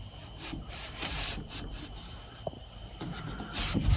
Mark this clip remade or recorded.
remade